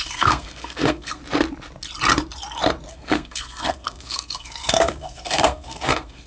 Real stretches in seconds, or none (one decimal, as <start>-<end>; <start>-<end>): 1.2-2.9

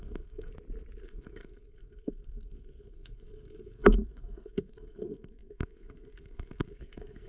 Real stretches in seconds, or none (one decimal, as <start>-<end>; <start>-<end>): 0.5-1.0

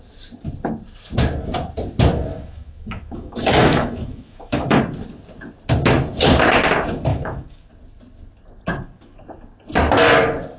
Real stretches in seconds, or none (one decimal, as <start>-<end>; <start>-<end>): 0.0-2.3; 4.8-7.1; 7.7-10.6

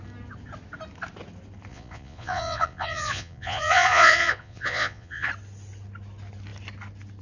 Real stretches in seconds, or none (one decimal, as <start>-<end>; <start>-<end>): 0.0-1.7; 5.3-7.2

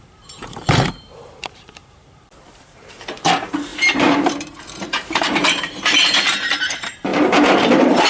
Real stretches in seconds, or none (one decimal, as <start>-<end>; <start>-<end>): none

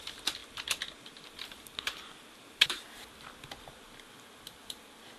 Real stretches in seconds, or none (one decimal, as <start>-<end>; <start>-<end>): 0.0-5.2